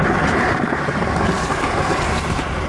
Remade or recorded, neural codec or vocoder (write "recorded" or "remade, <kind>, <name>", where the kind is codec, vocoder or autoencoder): recorded